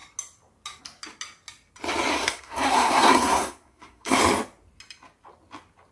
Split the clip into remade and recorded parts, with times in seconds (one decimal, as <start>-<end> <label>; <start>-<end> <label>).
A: 0.0-2.1 recorded; 2.1-4.2 remade; 4.2-5.9 recorded